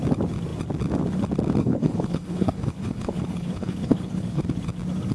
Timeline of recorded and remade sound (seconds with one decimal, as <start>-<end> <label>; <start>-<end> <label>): 0.0-1.6 recorded; 1.6-4.4 remade; 4.4-5.1 recorded